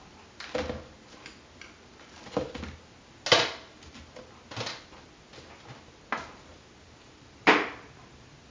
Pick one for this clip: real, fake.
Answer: real